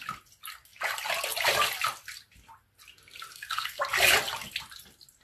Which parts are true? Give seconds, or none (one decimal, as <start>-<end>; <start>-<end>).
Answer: 0.0-3.3; 3.8-5.2